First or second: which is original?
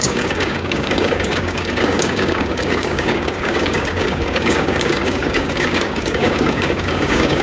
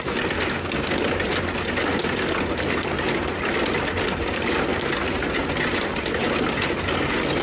second